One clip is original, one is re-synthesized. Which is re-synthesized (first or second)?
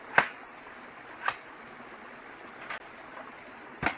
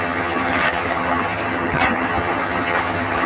second